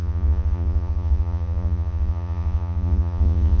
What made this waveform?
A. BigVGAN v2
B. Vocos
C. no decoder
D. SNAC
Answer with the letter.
B